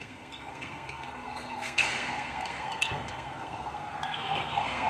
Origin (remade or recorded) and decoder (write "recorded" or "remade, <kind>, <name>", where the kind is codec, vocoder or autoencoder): remade, codec, SNAC